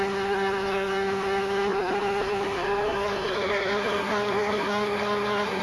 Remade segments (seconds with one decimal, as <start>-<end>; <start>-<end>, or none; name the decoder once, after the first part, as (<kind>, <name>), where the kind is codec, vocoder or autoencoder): 0.0-5.6 (codec, SNAC)